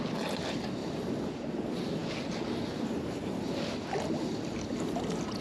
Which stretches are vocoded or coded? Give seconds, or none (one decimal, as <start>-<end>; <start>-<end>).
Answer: 0.8-1.3